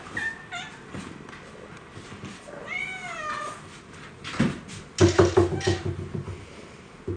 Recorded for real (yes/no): yes